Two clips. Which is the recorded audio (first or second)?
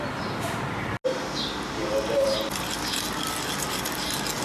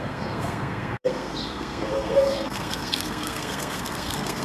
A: first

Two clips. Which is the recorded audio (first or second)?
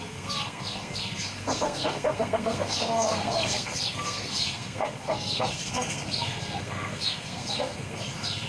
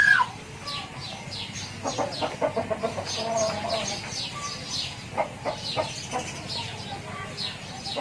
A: second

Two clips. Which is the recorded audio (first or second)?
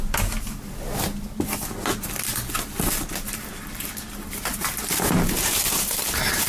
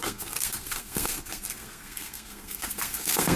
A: first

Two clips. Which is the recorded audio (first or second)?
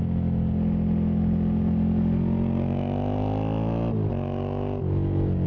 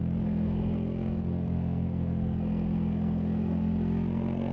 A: first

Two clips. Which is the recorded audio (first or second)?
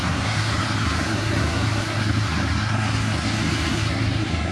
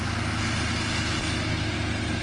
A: second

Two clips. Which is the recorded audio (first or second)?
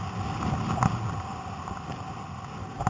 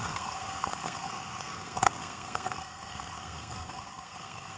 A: first